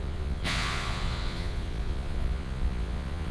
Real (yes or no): no